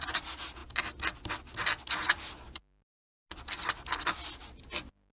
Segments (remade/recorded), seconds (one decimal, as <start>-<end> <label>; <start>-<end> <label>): 0.0-0.6 remade; 0.6-1.8 recorded; 1.8-3.0 remade; 3.0-5.2 recorded